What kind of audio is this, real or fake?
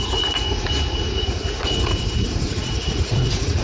fake